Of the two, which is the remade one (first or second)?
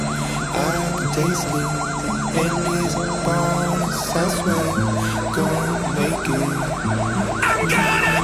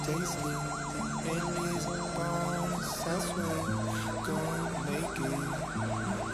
first